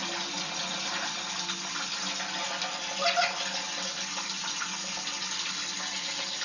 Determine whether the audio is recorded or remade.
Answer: recorded